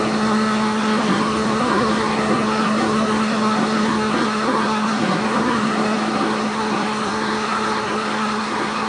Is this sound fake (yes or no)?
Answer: yes